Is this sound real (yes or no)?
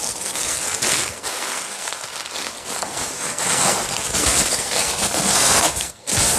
no